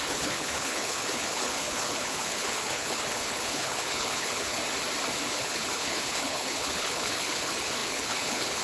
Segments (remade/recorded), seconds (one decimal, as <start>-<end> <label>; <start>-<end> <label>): 0.0-4.6 remade; 4.6-5.3 recorded; 5.3-8.6 remade